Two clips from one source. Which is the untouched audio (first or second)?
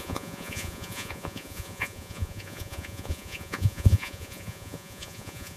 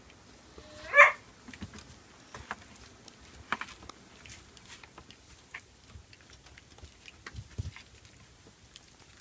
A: second